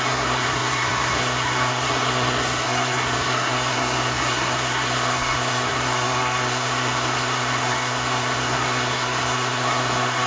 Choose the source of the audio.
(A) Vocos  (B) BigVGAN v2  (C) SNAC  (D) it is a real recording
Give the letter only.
C